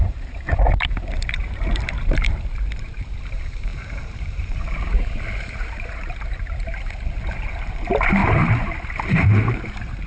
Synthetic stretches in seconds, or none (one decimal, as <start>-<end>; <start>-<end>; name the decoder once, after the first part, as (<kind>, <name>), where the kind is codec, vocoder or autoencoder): 0.0-10.1 (vocoder, BigVGAN v2)